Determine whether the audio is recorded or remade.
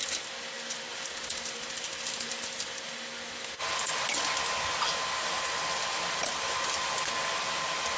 recorded